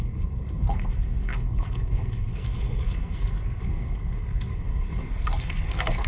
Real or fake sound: fake